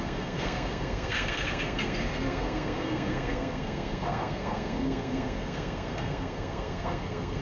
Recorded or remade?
remade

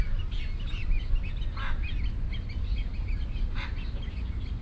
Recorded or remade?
recorded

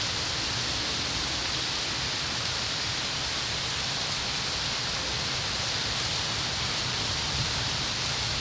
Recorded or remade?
recorded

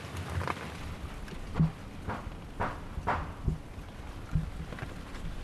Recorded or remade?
recorded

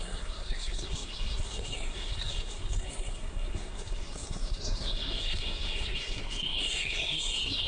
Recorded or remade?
remade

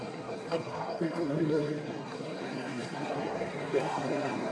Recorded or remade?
remade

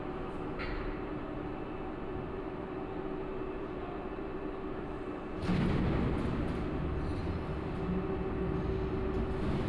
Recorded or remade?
recorded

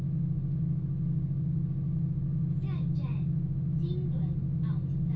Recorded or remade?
recorded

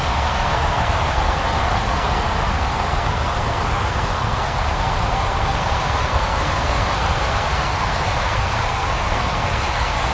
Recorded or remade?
remade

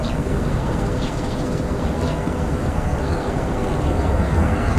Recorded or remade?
remade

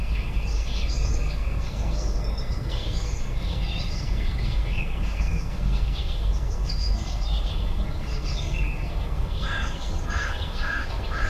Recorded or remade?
remade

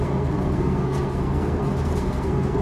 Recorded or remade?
remade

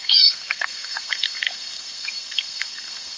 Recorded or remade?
remade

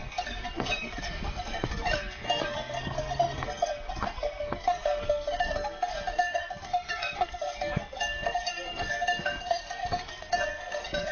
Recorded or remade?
remade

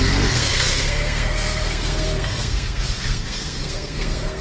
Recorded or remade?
remade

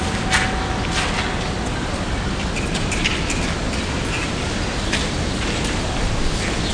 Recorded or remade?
recorded